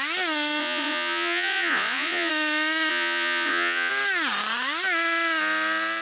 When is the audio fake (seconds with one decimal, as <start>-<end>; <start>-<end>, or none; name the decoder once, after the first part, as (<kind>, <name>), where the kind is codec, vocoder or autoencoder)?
0.6-2.3 (vocoder, Vocos); 2.9-3.9